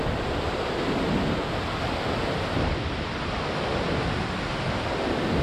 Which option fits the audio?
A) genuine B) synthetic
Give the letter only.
A